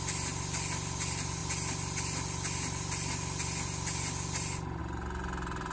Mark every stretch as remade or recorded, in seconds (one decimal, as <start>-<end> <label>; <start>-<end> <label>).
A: 0.0-5.7 recorded